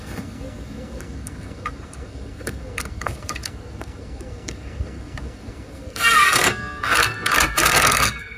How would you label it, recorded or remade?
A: remade